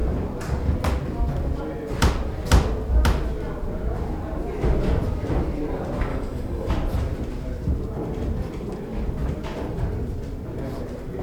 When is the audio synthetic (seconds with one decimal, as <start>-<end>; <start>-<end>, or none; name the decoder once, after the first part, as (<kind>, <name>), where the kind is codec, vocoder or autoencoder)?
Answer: 6.1-6.7 (codec, DAC)